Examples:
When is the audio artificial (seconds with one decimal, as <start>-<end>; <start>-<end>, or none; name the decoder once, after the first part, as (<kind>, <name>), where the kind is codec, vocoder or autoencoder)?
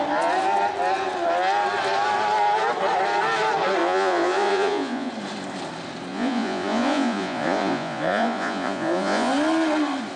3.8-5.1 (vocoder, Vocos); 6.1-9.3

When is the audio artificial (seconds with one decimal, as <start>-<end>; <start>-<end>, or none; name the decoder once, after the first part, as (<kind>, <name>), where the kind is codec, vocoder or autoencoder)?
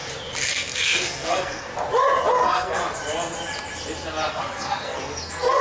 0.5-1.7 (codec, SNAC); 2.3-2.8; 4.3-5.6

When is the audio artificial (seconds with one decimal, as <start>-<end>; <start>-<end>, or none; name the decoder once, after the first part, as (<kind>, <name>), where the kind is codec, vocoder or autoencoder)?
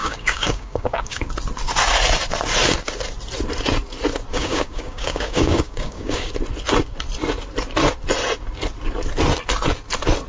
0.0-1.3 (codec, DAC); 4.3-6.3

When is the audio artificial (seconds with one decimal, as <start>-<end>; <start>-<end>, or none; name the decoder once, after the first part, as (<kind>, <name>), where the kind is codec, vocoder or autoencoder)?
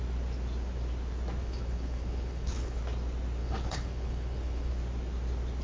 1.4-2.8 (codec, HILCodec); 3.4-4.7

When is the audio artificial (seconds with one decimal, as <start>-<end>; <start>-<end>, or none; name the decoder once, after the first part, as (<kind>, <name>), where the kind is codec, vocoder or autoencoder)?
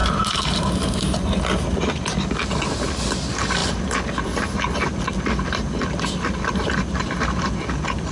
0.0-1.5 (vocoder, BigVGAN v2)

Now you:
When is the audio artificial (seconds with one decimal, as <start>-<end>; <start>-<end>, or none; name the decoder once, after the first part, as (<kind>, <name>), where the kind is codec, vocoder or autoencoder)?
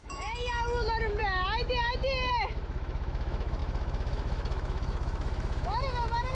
0.0-6.3 (autoencoder, DAC-VAE)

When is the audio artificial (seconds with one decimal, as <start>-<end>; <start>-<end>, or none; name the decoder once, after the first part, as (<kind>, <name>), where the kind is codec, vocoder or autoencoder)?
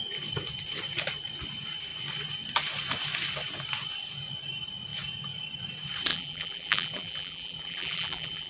6.1-8.5 (vocoder, BigVGAN v2)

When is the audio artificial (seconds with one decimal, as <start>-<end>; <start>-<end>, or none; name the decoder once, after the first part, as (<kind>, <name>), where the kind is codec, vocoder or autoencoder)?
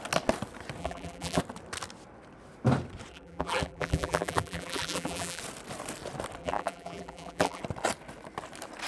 0.8-1.4 (vocoder, BigVGAN v2); 3.1-5.4; 6.4-7.6